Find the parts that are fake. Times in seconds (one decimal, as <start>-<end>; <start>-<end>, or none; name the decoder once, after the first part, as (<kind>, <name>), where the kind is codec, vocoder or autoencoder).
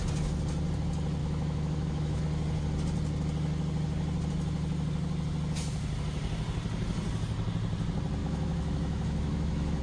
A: 1.2-2.2 (autoencoder, DAC-VAE); 8.2-9.8